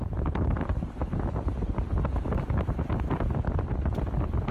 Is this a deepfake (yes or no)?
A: no